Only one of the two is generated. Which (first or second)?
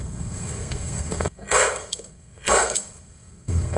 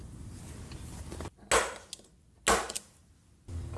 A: first